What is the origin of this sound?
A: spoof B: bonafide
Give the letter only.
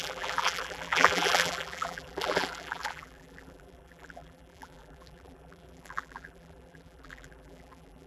A